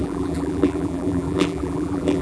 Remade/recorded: remade